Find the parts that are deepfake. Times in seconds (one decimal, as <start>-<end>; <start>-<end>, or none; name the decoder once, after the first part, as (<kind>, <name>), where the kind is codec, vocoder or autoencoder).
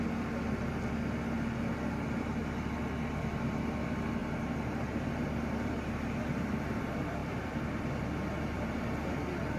4.2-6.8 (vocoder, BigVGAN v2); 7.2-7.8